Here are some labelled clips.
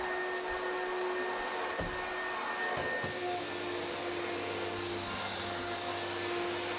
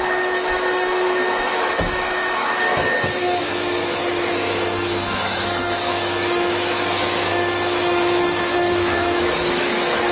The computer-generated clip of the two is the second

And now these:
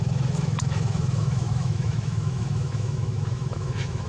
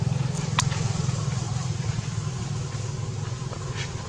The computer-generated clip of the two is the first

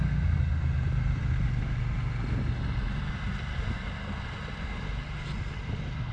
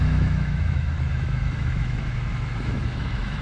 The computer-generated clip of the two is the second